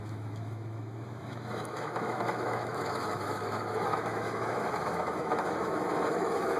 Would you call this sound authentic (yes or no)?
no